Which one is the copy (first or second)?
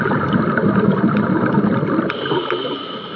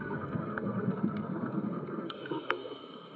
second